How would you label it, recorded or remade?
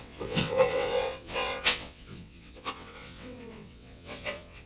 remade